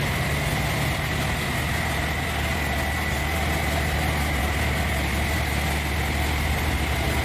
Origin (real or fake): real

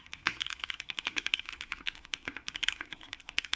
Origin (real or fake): fake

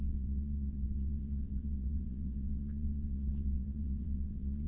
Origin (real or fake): fake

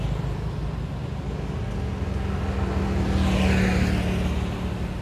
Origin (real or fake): real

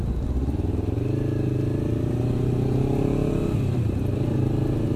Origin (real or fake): real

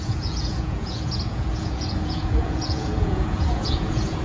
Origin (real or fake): fake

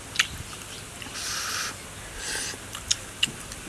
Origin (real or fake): real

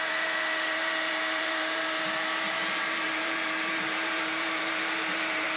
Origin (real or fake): fake